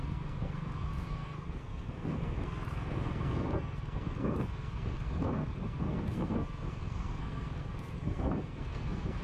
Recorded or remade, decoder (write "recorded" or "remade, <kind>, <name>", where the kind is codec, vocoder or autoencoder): remade, codec, SNAC